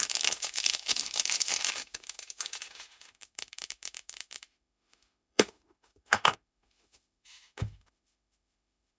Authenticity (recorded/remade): remade